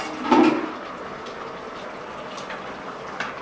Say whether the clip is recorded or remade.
recorded